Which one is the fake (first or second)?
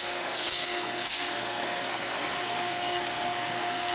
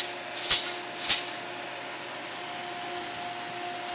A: first